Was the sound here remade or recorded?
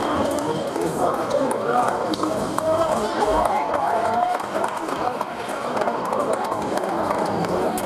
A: remade